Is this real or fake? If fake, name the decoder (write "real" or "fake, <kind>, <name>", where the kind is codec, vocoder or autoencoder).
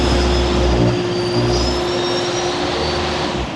real